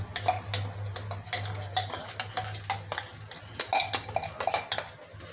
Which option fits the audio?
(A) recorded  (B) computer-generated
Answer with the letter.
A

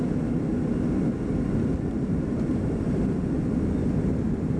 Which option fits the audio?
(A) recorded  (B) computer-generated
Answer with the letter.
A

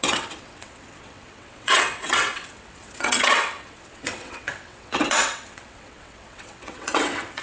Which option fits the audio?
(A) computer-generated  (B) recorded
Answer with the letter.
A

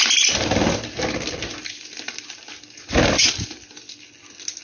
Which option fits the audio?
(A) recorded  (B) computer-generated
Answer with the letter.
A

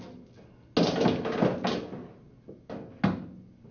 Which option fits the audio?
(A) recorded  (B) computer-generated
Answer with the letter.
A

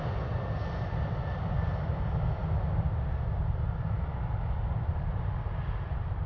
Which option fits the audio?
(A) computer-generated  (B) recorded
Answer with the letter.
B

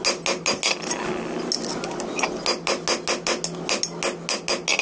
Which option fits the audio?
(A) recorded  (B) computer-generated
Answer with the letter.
A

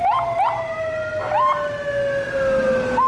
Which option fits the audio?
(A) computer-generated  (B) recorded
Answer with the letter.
B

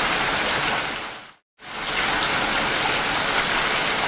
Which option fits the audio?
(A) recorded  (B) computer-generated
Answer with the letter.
A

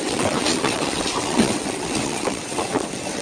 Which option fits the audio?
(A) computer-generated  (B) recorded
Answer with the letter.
A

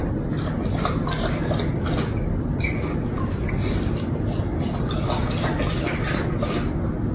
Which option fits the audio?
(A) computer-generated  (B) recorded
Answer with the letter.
B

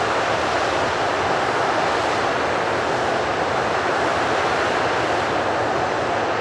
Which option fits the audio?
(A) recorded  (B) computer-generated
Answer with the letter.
A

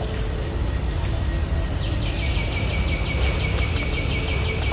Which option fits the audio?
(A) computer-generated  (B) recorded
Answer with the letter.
B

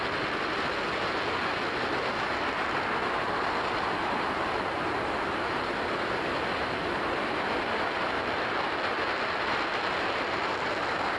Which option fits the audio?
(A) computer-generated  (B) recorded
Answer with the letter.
B